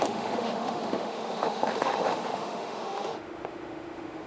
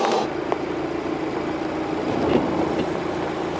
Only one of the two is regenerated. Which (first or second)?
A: first